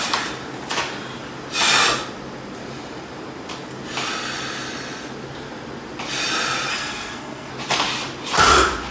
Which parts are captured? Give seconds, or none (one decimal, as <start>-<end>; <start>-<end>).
0.0-6.7; 7.5-8.9